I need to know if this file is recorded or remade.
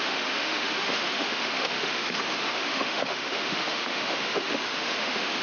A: remade